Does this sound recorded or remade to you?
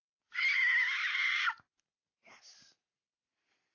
recorded